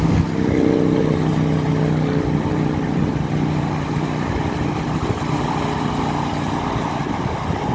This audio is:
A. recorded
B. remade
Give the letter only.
A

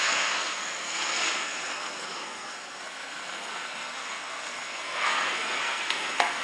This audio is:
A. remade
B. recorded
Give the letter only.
A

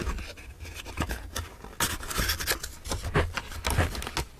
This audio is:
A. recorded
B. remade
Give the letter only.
A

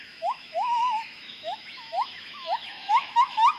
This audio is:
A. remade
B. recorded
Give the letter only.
A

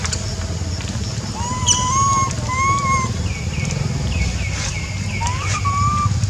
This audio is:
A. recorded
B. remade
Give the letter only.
A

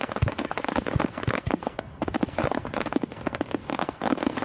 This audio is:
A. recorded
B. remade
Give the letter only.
B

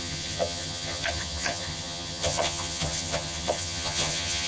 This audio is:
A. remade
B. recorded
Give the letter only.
A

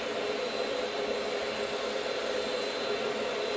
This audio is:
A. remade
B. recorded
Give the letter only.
B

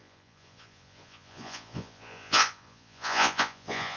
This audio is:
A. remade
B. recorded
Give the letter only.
A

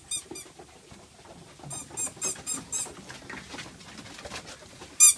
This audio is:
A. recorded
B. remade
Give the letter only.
A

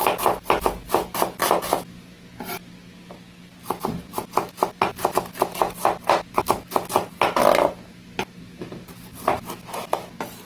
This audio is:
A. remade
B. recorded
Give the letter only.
B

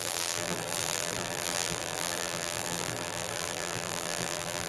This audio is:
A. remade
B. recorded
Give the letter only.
A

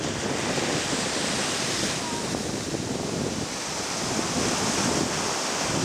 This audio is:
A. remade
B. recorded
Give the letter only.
B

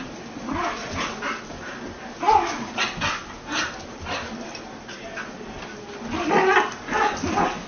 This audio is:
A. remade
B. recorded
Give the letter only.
B